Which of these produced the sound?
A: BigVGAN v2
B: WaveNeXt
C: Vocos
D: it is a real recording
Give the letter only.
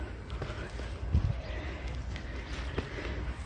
D